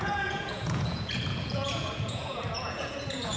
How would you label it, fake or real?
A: fake